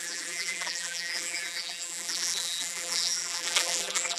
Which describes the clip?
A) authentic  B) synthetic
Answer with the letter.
B